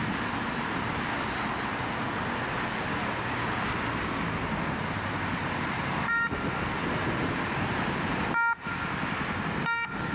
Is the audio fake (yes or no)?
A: no